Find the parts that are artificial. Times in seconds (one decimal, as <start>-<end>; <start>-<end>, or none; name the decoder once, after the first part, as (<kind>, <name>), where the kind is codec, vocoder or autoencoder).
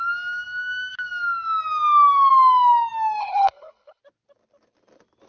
3.2-4.0 (codec, HILCodec)